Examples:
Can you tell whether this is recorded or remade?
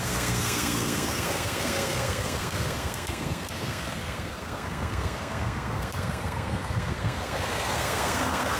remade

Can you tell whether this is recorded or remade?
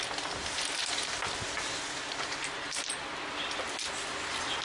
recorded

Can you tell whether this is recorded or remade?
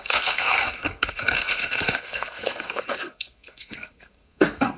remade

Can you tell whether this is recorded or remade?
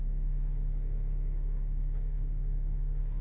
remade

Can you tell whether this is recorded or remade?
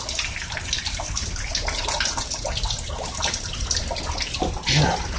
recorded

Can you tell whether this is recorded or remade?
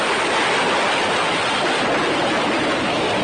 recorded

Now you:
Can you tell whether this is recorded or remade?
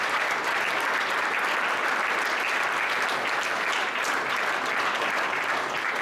recorded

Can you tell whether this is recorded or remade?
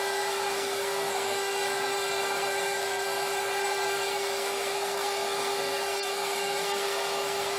remade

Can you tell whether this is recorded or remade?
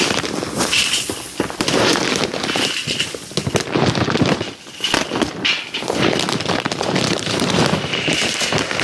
recorded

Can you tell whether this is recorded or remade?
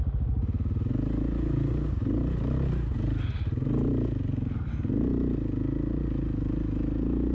recorded